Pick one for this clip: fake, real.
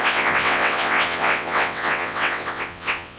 fake